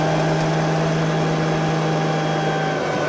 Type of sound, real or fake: real